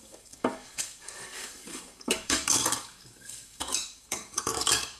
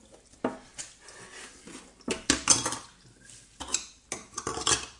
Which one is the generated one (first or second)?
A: first